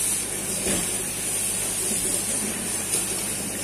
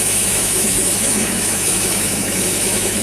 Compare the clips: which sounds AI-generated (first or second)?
second